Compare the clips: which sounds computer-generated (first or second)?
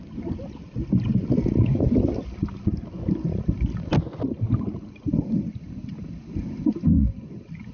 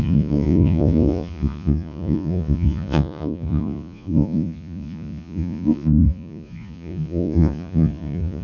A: second